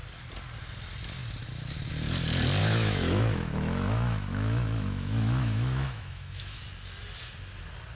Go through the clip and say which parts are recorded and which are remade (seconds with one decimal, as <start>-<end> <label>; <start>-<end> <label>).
0.0-2.6 recorded; 2.6-6.6 remade; 6.6-7.9 recorded